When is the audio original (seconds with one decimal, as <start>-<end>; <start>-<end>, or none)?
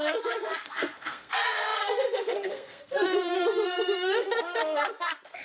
none